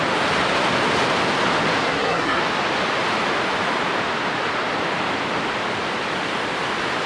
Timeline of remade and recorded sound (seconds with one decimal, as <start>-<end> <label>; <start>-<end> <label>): 0.0-1.8 recorded; 1.8-2.4 remade; 2.4-7.1 recorded